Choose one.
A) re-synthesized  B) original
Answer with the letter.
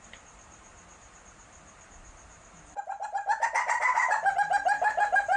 A